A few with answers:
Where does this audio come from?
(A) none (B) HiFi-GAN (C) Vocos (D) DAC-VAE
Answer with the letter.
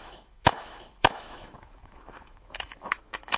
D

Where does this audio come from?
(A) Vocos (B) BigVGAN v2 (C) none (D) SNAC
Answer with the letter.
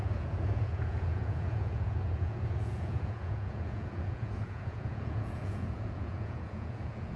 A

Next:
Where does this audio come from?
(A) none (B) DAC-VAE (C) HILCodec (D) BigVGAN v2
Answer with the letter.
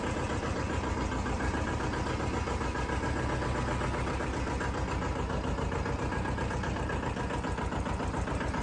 A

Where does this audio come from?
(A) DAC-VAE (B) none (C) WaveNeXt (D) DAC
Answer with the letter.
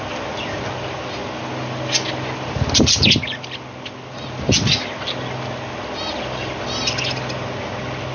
B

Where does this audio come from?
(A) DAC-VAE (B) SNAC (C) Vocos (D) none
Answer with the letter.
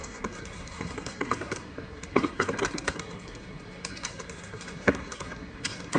B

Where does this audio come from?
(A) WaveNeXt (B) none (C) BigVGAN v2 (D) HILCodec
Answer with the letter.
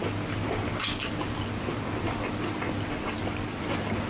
B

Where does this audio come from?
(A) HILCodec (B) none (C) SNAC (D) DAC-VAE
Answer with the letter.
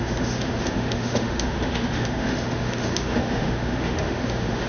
D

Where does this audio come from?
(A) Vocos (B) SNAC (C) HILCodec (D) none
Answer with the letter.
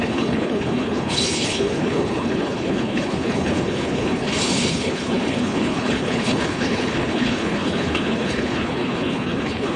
C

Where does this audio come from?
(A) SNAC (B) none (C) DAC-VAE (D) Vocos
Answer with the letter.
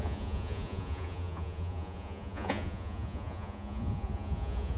D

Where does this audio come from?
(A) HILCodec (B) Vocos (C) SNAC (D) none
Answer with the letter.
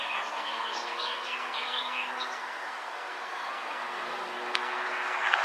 C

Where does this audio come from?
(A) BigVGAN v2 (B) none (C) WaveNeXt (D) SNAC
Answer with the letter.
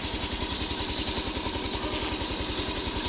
B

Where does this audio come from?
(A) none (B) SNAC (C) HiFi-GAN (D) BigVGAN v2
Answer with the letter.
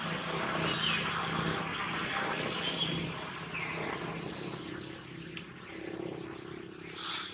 A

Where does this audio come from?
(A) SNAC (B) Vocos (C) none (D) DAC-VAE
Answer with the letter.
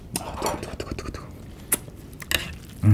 C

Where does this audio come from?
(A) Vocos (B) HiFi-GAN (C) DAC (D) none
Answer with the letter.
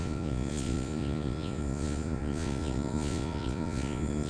A